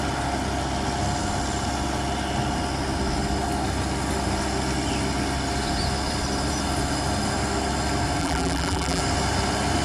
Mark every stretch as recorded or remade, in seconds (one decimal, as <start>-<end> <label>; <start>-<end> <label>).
0.0-8.2 recorded; 8.2-9.0 remade; 9.0-9.8 recorded

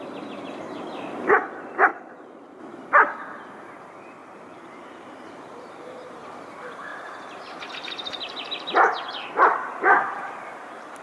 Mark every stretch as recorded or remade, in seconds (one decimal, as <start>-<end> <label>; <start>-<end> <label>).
0.0-1.9 recorded; 1.9-2.6 remade; 2.6-4.2 recorded; 4.2-6.5 remade; 6.5-6.9 recorded; 6.9-11.0 remade

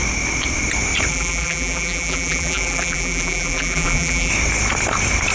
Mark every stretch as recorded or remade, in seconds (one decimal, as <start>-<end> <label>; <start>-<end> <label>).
0.0-1.1 recorded; 1.1-4.3 remade; 4.3-5.3 recorded

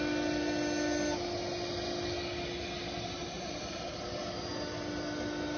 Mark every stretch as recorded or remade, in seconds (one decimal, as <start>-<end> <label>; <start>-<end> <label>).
0.0-3.2 recorded; 3.2-4.2 remade; 4.2-5.6 recorded

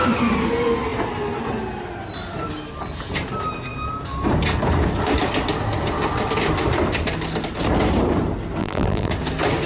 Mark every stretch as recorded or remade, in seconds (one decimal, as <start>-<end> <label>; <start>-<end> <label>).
0.0-8.6 recorded; 8.6-9.1 remade; 9.1-9.7 recorded